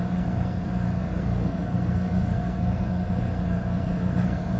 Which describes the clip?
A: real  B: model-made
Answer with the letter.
B